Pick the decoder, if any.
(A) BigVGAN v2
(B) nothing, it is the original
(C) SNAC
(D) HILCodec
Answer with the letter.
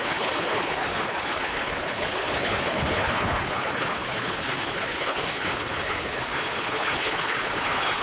D